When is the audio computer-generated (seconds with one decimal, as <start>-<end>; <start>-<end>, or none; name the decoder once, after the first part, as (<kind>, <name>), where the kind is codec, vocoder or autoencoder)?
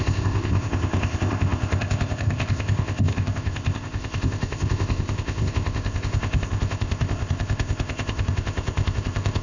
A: 0.0-9.4 (codec, ZipCodec)